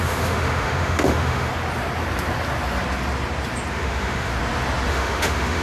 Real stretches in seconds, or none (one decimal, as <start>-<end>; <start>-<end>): 1.5-3.7; 4.3-4.9